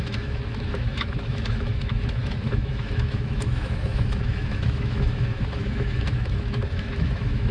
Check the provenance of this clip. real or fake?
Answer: fake